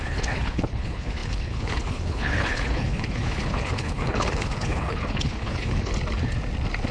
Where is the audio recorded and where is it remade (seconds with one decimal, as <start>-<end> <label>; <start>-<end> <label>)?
0.0-5.9 remade; 5.9-6.9 recorded